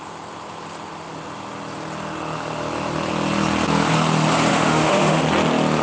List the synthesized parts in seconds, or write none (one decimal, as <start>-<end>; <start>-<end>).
4.5-5.2

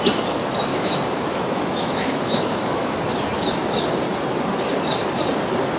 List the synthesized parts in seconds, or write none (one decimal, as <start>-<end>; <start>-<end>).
0.7-3.0